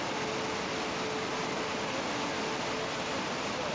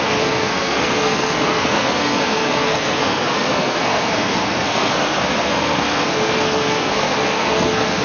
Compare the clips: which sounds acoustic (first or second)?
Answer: first